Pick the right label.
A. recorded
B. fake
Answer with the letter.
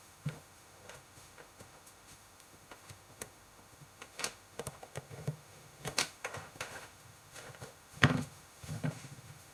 B